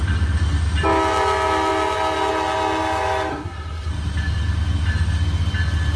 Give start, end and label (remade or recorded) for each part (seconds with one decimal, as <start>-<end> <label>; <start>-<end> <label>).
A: 0.0-3.3 recorded; 3.3-3.9 remade; 3.9-6.0 recorded